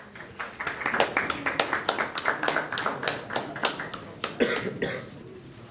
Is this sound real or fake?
real